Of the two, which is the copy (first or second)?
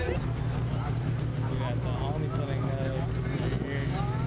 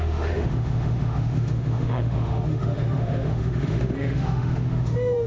second